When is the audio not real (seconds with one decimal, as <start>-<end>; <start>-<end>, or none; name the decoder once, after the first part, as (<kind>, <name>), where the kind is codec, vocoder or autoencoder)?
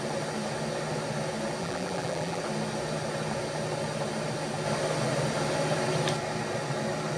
1.6-2.4 (vocoder, BigVGAN v2)